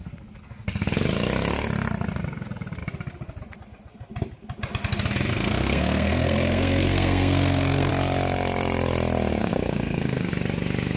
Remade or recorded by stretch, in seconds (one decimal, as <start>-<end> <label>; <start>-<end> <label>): 0.0-5.3 recorded; 5.3-7.9 remade; 7.9-9.4 recorded; 9.4-10.3 remade; 10.3-11.0 recorded